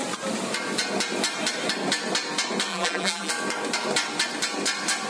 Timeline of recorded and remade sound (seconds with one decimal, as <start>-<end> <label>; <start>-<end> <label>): 0.0-2.7 recorded; 2.7-3.3 remade; 3.3-5.1 recorded